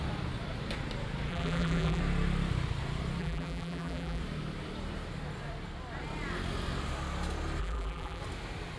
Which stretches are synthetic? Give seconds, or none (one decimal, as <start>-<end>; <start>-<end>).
1.3-2.0; 3.2-4.2; 7.6-8.2